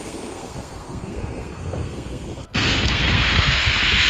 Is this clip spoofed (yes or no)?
yes